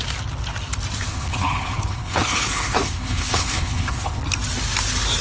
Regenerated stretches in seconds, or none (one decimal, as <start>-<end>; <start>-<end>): 1.1-4.2